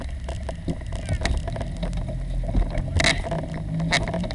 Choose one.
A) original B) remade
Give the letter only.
A